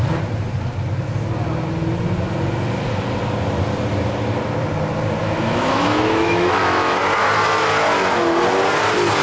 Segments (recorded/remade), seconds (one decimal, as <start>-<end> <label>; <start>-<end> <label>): 0.0-5.2 recorded; 5.2-6.9 remade; 6.9-9.2 recorded